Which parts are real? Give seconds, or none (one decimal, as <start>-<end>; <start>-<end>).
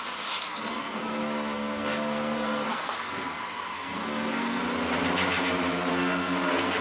0.0-0.5; 4.6-5.9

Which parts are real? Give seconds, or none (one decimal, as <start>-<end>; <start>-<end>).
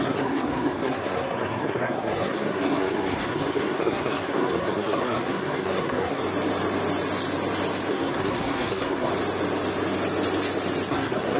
6.2-7.9; 9.1-10.9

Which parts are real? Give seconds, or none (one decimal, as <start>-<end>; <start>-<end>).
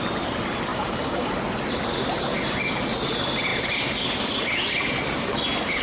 0.0-0.7; 1.3-5.8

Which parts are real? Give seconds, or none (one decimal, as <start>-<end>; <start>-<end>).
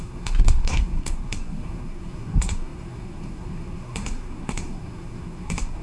none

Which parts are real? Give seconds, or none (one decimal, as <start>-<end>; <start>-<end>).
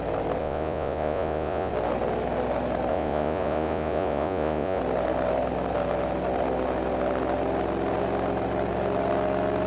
0.0-0.4; 1.7-2.9; 4.8-9.7